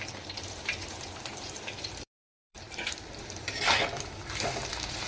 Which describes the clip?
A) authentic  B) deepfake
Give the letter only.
B